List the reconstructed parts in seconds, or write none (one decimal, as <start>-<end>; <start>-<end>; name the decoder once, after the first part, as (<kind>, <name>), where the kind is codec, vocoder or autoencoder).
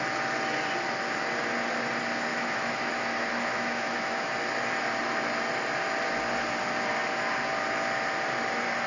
2.3-2.9 (autoencoder, DAC-VAE); 3.5-4.3